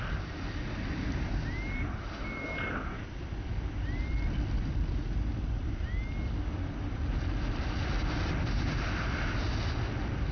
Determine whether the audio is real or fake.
real